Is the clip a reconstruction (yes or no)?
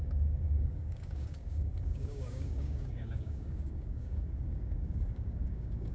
yes